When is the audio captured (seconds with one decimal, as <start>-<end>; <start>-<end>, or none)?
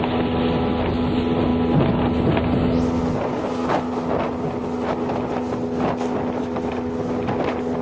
0.0-7.8